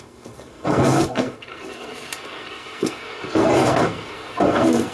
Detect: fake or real fake